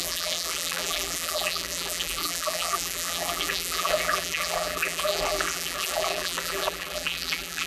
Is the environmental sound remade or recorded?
remade